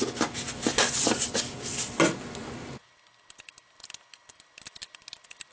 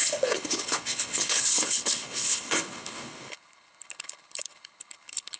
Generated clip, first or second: second